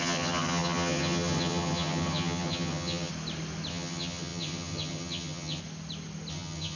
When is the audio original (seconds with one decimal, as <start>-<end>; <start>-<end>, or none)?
3.1-3.7; 5.6-6.3